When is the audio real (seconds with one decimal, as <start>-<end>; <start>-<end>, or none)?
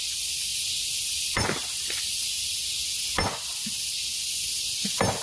0.0-0.5; 2.1-5.2